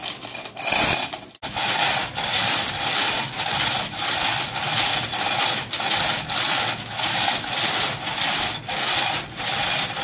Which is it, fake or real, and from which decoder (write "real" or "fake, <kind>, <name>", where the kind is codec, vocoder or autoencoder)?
real